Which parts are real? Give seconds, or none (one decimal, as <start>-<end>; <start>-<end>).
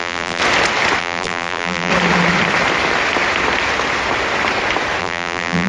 0.4-1.0; 1.9-5.0